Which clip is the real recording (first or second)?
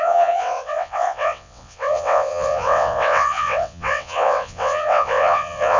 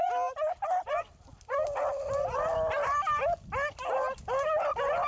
second